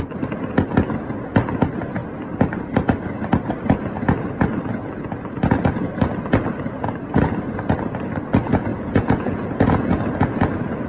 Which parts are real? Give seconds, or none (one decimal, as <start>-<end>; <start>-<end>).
0.0-8.7; 10.5-10.9